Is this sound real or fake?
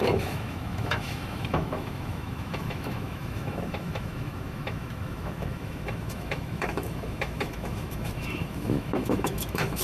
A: fake